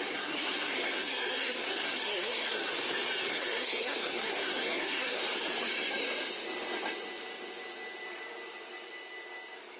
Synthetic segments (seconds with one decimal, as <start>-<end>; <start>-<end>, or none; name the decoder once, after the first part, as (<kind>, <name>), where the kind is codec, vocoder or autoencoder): 0.0-2.7 (codec, SNAC); 3.3-5.2